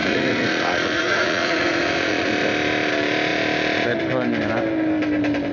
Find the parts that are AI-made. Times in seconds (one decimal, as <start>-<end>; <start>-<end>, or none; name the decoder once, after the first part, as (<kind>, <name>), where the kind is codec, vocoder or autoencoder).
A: 0.0-2.3 (vocoder, Vocos)